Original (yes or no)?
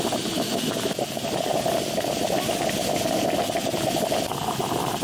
yes